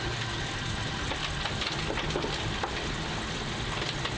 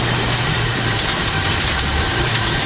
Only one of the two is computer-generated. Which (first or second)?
second